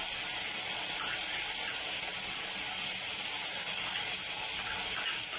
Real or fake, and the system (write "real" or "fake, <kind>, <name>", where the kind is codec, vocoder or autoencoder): real